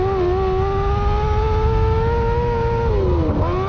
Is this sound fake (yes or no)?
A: no